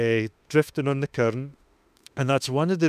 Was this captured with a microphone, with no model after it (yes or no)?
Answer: no